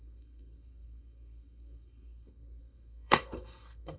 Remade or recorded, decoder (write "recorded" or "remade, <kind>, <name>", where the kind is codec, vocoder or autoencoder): remade, codec, SNAC